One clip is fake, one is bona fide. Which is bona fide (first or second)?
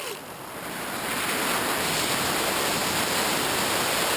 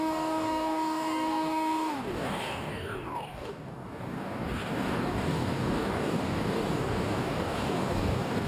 first